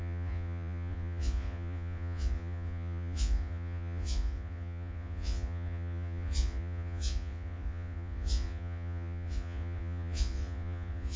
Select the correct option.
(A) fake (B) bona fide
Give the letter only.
A